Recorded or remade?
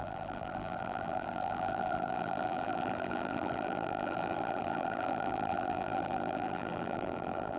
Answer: remade